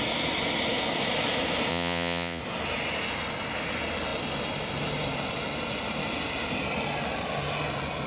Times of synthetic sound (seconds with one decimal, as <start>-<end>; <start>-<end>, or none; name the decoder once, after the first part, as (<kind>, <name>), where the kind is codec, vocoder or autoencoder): 1.7-2.4 (vocoder, Vocos)